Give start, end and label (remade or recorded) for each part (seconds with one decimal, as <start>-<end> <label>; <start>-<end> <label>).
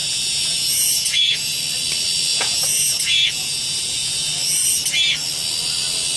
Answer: 0.0-1.6 remade; 1.6-2.3 recorded; 2.3-4.3 remade; 4.3-6.2 recorded